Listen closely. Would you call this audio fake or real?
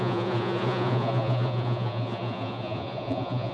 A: fake